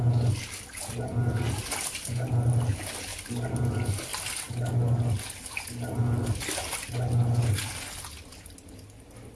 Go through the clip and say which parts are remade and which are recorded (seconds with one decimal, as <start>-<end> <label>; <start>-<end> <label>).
0.0-1.6 recorded; 1.6-2.3 remade; 2.3-9.4 recorded